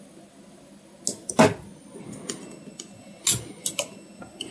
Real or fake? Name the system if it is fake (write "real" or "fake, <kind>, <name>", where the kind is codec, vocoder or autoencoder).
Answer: real